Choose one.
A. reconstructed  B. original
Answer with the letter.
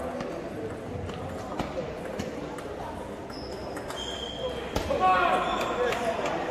B